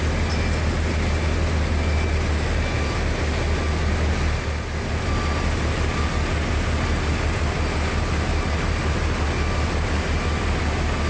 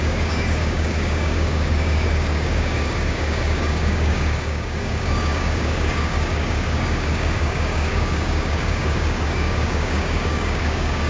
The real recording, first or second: first